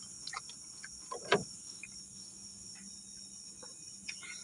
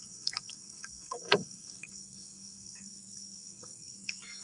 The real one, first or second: first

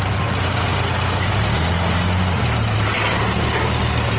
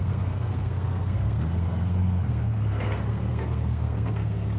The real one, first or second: first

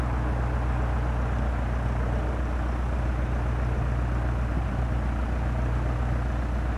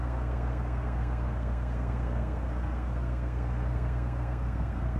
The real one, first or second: first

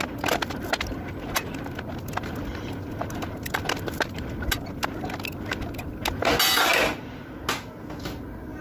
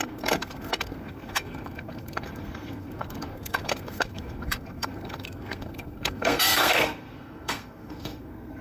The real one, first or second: first